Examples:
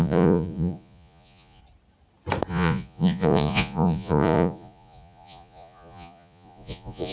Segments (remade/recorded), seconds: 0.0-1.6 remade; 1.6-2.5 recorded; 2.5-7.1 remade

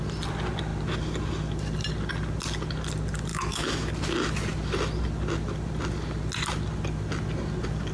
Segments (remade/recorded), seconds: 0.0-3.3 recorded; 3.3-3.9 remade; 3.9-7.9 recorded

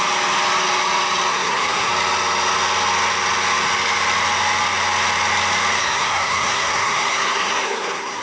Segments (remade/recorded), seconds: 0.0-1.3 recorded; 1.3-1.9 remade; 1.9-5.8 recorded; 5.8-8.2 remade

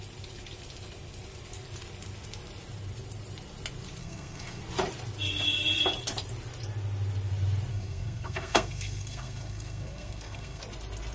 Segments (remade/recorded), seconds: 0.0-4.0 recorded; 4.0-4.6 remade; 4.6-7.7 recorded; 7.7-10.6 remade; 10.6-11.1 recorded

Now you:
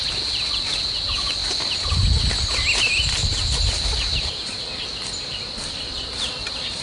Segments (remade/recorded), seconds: 0.0-3.2 recorded; 3.2-4.6 remade; 4.6-6.8 recorded